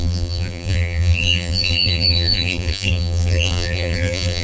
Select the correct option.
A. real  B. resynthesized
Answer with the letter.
B